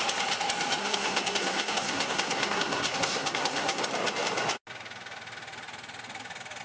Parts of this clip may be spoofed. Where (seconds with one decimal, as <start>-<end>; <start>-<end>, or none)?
0.8-3.8